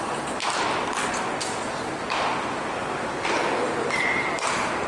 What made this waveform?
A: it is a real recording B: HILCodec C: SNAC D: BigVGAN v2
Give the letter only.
A